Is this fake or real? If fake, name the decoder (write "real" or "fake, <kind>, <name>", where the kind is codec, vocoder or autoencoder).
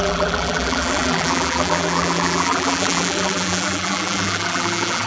fake, vocoder, BigVGAN v2